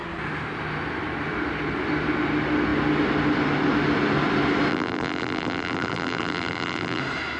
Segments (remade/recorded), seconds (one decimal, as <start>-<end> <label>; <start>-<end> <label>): 0.0-4.7 recorded; 4.7-7.0 remade; 7.0-7.4 recorded